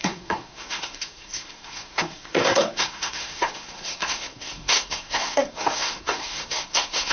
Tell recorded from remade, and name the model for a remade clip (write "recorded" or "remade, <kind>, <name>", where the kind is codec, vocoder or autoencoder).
remade, codec, SNAC